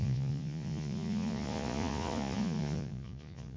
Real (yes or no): no